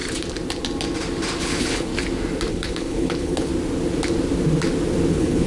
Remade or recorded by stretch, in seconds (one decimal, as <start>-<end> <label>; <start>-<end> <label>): 0.0-1.4 recorded; 1.4-1.9 remade; 1.9-2.5 recorded; 2.5-3.5 remade; 3.5-5.1 recorded; 5.1-5.5 remade